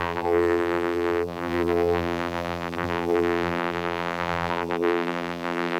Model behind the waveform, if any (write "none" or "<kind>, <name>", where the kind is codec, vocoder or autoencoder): vocoder, BigVGAN v2